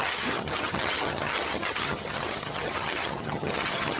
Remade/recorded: remade